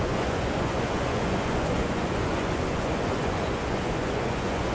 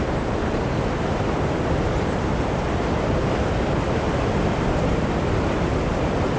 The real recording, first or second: second